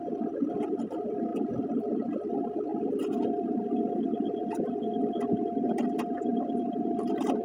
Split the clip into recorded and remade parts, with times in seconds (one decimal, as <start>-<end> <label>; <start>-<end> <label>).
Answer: 0.0-7.4 recorded